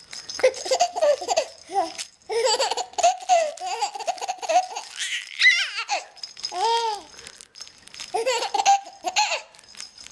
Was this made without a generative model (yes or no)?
yes